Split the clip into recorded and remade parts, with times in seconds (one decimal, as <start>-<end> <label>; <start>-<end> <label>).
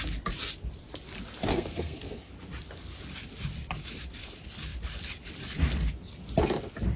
0.0-1.5 recorded; 1.5-2.3 remade; 2.3-7.0 recorded